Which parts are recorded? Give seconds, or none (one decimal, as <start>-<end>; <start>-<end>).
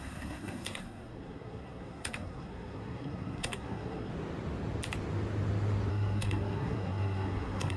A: 4.1-5.9